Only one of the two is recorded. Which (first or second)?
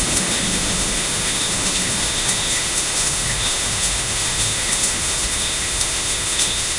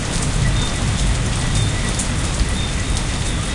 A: second